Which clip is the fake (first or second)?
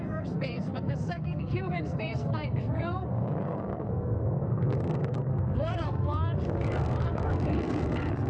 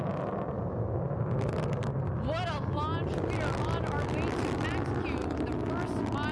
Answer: first